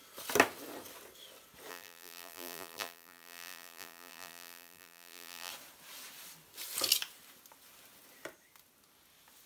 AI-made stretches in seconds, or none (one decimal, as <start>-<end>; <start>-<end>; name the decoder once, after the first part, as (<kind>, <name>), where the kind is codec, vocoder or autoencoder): 1.7-5.5 (vocoder, BigVGAN v2)